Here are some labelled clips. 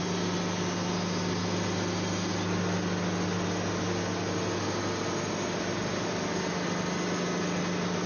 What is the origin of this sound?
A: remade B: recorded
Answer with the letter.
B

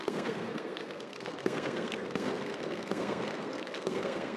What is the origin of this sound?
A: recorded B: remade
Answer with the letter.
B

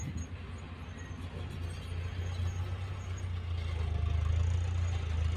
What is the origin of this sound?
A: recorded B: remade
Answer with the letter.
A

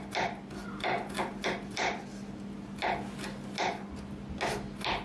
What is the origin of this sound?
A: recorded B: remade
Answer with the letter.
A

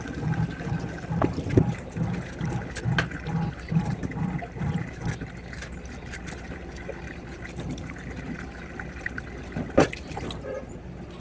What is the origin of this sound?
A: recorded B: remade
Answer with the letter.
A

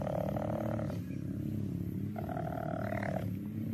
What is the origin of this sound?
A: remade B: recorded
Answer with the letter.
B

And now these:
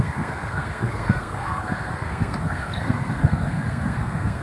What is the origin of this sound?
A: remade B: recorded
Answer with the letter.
A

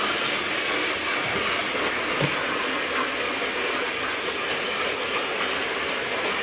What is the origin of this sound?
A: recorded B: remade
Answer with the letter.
A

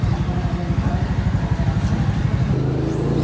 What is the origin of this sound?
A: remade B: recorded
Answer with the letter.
B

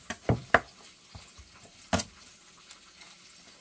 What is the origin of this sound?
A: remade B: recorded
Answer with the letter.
B